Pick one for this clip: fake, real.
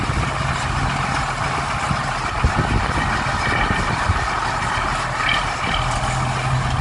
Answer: real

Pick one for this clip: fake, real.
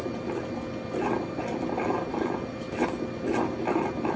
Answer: real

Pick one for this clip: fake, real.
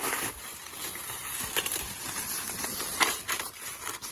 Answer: real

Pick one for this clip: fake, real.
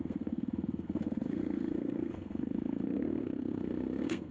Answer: fake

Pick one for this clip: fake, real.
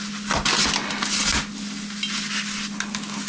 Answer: real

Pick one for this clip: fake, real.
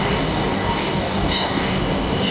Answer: fake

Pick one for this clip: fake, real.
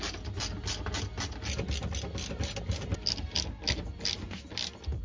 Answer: real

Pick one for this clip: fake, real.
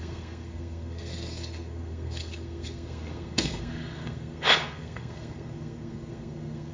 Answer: fake